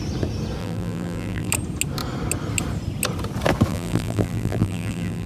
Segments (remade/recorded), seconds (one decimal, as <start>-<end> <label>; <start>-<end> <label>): 0.0-0.6 recorded; 0.6-1.5 remade; 1.5-3.7 recorded; 3.7-5.3 remade